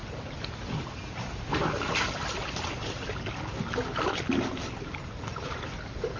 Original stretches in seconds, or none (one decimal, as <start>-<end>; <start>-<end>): 0.0-6.2